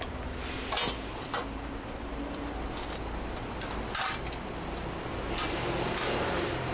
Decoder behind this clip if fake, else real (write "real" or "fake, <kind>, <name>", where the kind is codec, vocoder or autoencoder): real